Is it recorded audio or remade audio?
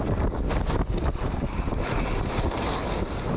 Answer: recorded